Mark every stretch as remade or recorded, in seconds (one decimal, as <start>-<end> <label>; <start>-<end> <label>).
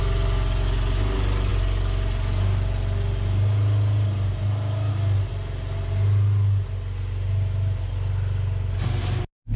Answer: 0.0-9.6 recorded